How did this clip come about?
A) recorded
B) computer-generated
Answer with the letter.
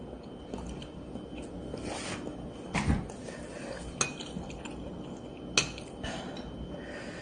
A